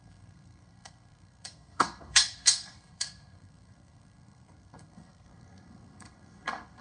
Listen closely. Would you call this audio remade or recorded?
remade